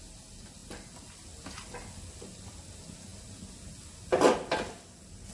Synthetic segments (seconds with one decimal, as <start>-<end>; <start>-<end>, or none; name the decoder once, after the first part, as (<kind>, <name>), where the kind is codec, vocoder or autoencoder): none